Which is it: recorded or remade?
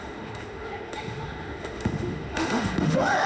remade